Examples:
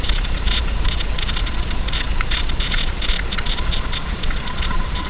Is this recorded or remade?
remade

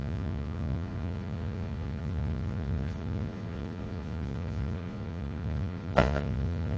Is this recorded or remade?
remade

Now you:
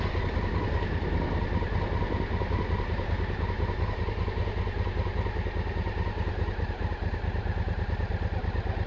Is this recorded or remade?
recorded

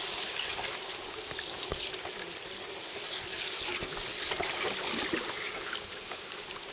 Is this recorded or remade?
recorded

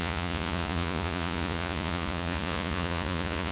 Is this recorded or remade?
remade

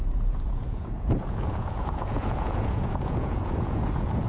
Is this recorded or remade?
remade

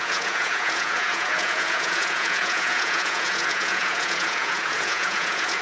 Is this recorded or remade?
remade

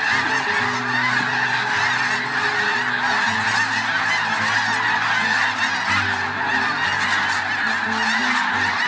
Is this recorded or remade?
recorded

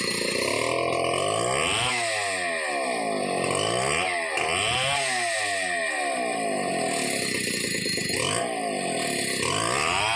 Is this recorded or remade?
recorded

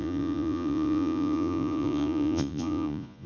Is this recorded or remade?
remade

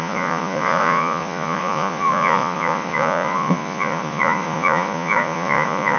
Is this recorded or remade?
remade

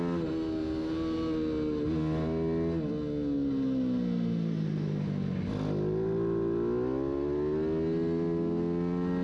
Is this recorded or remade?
recorded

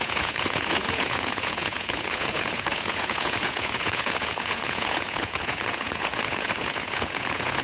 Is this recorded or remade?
remade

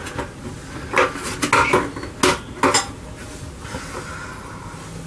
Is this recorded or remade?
recorded